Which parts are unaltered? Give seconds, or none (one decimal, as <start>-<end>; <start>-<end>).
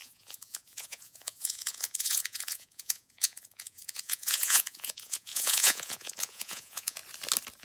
7.0-7.6